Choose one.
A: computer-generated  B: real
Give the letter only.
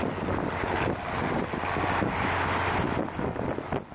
B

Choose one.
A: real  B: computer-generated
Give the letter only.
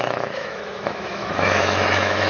B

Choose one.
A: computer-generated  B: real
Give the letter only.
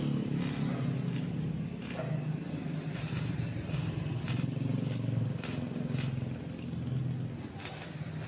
B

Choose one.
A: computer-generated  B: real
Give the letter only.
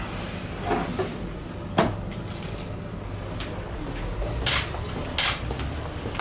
B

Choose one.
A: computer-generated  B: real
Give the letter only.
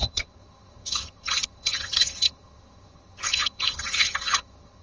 A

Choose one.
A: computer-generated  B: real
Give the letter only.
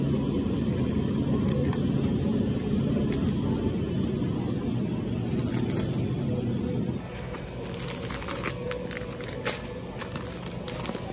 B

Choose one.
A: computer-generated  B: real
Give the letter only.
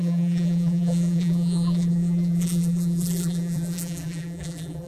A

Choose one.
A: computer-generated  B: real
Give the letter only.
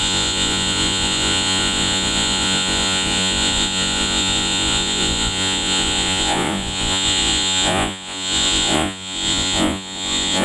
A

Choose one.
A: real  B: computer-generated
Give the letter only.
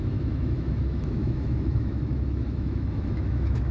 B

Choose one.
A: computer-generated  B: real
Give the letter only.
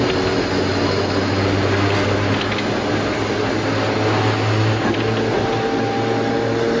B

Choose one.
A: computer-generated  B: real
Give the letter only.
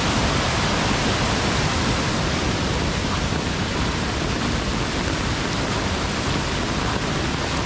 B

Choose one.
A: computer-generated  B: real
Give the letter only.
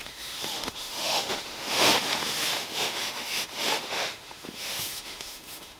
A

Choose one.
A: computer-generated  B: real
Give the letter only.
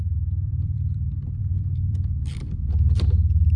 A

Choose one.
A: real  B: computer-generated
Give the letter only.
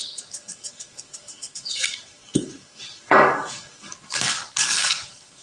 B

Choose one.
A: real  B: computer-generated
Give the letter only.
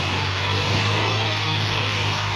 B